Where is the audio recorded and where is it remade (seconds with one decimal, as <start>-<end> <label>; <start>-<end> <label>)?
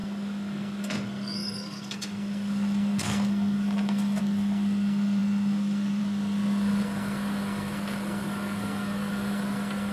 0.0-9.9 remade